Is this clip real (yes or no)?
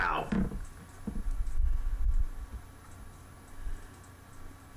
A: yes